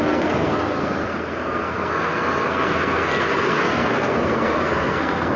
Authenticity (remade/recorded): remade